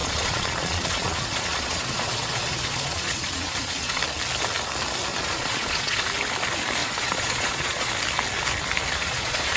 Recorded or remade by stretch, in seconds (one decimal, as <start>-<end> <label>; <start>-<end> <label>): 0.0-4.0 remade; 4.0-5.1 recorded; 5.1-6.0 remade; 6.0-6.8 recorded; 6.8-7.9 remade; 7.9-9.0 recorded; 9.0-9.6 remade